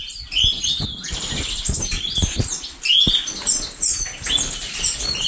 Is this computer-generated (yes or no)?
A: no